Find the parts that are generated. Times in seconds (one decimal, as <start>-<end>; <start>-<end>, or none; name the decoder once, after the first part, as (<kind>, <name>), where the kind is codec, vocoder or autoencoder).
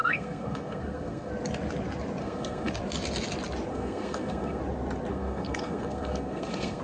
0.0-1.3 (codec, SNAC); 2.2-2.7; 3.7-4.6; 5.1-6.8